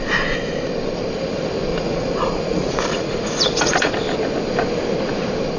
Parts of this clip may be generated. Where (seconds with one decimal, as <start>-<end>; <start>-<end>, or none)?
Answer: 1.7-3.9